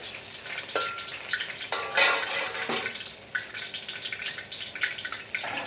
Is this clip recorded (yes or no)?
yes